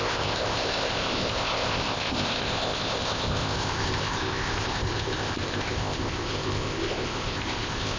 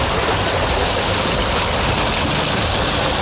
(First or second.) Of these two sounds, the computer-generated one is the first